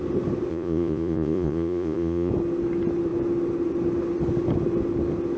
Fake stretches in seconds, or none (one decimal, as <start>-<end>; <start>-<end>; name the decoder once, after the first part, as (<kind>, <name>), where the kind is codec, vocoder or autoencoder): 0.5-2.3 (vocoder, Vocos)